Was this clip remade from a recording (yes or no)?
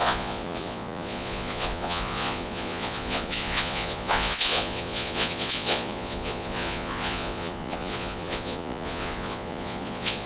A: yes